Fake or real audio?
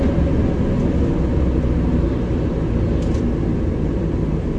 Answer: real